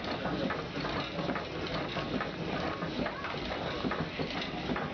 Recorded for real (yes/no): yes